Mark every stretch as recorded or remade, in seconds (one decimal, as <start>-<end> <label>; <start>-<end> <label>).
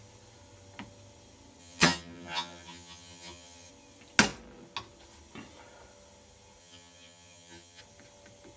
0.0-1.6 recorded; 1.6-3.7 remade; 3.7-6.6 recorded; 6.6-7.8 remade; 7.8-8.6 recorded